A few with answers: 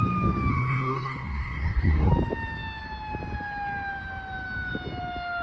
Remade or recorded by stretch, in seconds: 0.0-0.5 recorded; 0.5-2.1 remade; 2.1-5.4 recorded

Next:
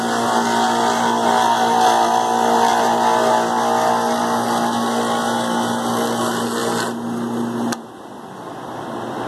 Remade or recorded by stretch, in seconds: 0.0-9.3 recorded

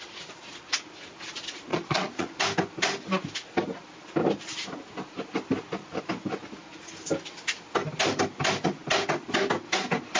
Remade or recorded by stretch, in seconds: 0.0-1.7 recorded; 1.7-2.4 remade; 2.4-10.2 recorded

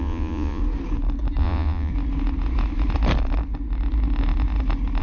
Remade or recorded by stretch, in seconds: 0.0-0.6 remade; 0.6-1.4 recorded; 1.4-1.9 remade; 1.9-5.0 recorded